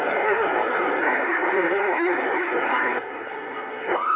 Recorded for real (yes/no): no